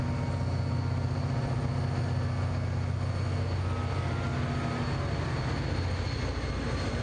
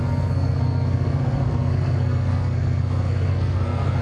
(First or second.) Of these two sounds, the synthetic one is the second